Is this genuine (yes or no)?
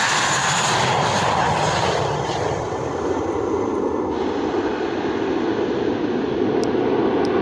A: yes